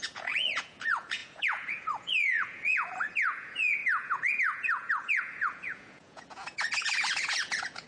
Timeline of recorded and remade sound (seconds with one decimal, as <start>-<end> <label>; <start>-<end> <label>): 0.0-7.9 remade